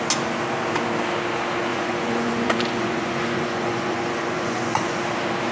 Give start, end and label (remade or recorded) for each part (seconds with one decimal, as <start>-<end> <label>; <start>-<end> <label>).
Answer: 0.0-1.7 recorded; 1.7-5.0 remade; 5.0-5.5 recorded